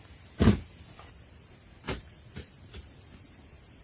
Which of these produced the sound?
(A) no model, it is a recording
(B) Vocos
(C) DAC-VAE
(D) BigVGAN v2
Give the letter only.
A